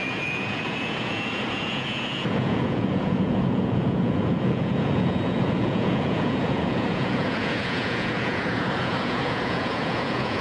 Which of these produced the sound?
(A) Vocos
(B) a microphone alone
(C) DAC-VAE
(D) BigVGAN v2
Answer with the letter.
A